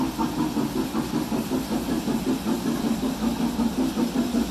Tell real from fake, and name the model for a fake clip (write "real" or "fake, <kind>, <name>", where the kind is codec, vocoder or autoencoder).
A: real